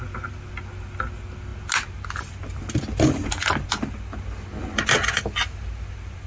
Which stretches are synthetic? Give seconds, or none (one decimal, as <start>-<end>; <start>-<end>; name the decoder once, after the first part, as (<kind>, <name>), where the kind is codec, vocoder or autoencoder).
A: none